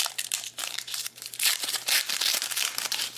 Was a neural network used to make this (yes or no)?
yes